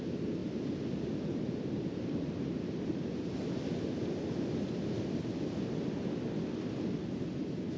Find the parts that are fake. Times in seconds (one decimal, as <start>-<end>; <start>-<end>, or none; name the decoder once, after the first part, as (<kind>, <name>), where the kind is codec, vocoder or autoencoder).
none